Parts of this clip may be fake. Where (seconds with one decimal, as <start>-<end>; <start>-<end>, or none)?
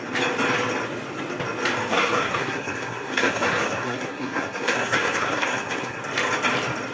1.9-6.0